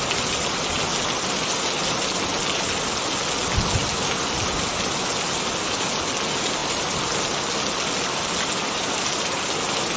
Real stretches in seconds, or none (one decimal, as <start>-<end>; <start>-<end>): 0.0-6.6; 7.2-10.0